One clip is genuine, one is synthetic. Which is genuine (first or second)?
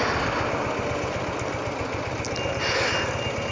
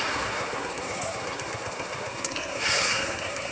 first